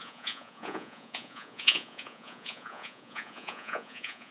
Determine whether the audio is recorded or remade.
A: remade